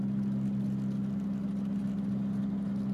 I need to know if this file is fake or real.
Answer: real